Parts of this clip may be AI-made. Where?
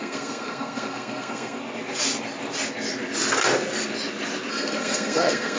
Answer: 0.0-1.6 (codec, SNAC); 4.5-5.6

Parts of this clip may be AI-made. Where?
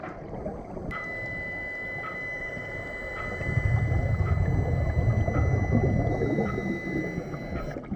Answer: none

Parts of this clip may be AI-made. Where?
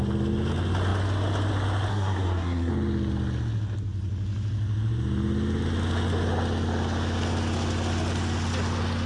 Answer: 1.9-2.7 (codec, SNAC)